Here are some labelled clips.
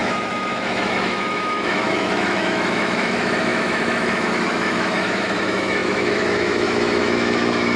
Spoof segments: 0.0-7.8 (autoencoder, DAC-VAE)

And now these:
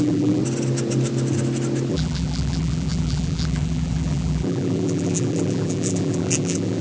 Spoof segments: 0.0-0.4 (vocoder, BigVGAN v2); 1.9-6.8

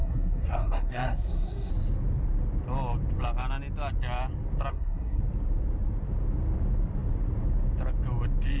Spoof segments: 0.0-1.7 (codec, SNAC); 4.7-5.2

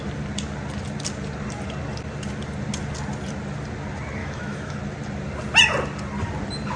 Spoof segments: 4.2-4.8 (autoencoder, DAC-VAE)

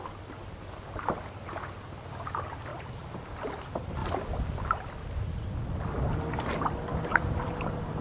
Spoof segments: 2.7-3.3 (vocoder, BigVGAN v2); 7.1-8.0